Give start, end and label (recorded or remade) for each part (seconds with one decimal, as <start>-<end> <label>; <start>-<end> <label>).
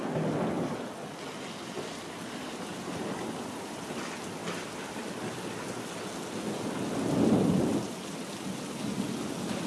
0.0-2.7 recorded; 2.7-4.0 remade; 4.0-9.7 recorded